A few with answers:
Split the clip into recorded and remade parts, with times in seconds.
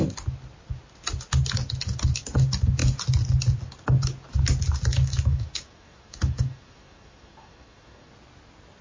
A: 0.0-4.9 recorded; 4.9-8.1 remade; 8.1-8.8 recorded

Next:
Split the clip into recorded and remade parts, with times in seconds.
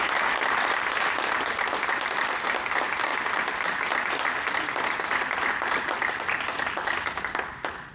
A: 0.0-7.9 recorded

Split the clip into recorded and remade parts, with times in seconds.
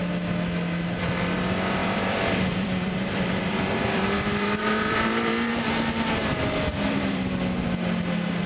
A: 0.0-1.8 recorded; 1.8-5.5 remade; 5.5-6.7 recorded; 6.7-7.4 remade; 7.4-8.5 recorded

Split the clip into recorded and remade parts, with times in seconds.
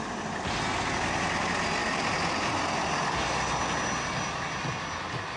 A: 0.0-5.4 recorded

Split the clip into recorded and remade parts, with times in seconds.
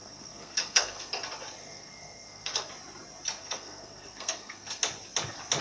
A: 0.0-1.1 remade; 1.1-1.6 recorded; 1.6-2.7 remade; 2.7-3.4 recorded; 3.4-4.8 remade; 4.8-5.6 recorded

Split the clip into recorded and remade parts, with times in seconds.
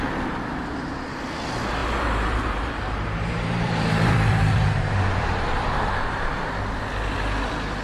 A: 0.0-1.8 recorded; 1.8-6.3 remade; 6.3-7.8 recorded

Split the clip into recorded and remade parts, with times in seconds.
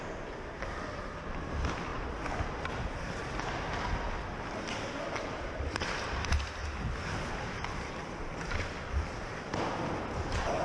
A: 0.0-1.9 remade; 1.9-4.1 recorded; 4.1-6.6 remade; 6.6-7.7 recorded; 7.7-10.6 remade